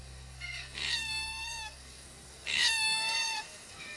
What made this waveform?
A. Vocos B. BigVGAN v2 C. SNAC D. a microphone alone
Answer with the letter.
C